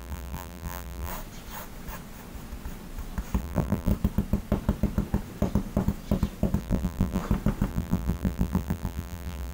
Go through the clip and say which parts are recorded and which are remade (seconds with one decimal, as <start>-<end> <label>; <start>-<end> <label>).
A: 0.0-1.1 remade; 1.1-3.4 recorded; 3.4-3.9 remade; 3.9-6.6 recorded; 6.6-7.2 remade; 7.2-7.7 recorded; 7.7-9.5 remade